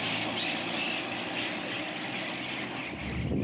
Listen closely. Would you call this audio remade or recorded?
recorded